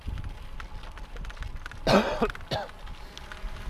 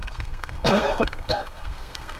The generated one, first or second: second